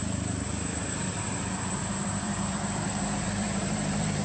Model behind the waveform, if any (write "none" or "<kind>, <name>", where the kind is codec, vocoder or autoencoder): vocoder, BigVGAN v2